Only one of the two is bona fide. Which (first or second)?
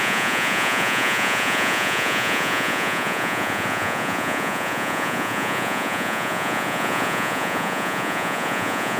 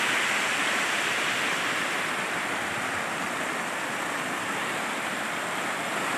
second